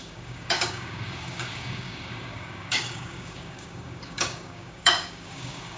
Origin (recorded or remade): remade